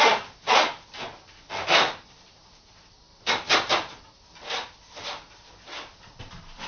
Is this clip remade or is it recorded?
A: recorded